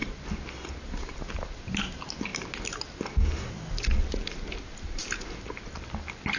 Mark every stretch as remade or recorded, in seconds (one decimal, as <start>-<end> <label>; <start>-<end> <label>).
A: 0.0-6.4 recorded